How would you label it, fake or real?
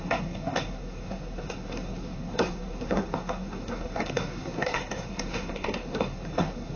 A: fake